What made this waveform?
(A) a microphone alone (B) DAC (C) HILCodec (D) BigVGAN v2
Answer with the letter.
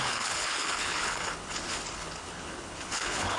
C